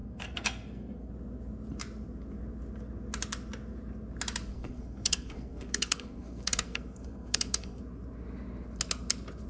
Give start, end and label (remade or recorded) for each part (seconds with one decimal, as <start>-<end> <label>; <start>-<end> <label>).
0.0-1.1 remade; 1.1-4.5 recorded; 4.5-7.8 remade; 7.8-9.5 recorded